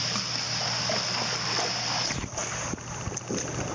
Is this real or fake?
real